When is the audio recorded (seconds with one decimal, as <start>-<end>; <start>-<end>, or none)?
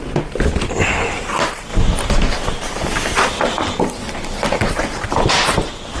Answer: 0.0-6.0